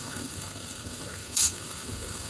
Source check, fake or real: fake